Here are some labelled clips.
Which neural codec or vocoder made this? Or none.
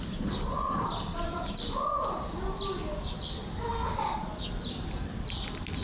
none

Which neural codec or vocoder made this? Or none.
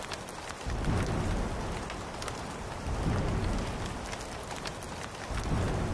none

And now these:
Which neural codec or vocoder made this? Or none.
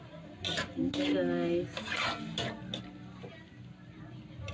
none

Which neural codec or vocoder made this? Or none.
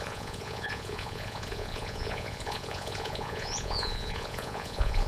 vocoder, Vocos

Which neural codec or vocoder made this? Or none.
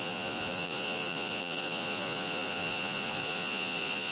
vocoder, Vocos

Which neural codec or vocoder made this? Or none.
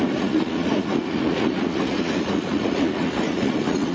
vocoder, Vocos